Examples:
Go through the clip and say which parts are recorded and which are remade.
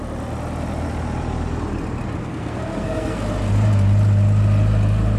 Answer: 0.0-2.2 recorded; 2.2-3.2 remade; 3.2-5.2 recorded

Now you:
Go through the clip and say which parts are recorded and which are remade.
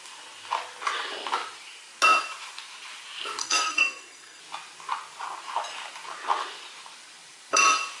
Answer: 0.0-3.4 recorded; 3.4-4.4 remade; 4.4-8.0 recorded